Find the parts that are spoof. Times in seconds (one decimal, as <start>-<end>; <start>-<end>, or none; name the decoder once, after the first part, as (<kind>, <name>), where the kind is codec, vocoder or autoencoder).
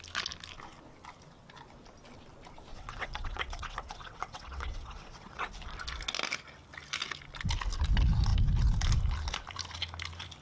2.7-5.5 (vocoder, WaveNeXt)